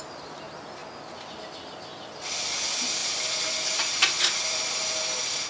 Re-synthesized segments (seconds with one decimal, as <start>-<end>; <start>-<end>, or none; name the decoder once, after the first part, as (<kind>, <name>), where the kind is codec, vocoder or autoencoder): none